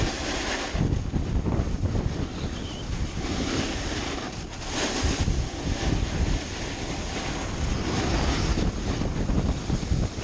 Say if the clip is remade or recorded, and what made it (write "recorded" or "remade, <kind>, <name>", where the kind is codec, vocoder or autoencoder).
recorded